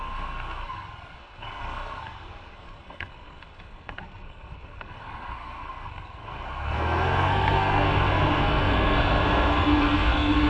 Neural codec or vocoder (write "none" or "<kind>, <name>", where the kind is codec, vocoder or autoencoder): codec, SNAC